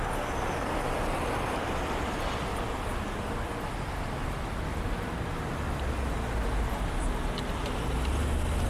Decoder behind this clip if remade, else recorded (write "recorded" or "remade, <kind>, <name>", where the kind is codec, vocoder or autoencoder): recorded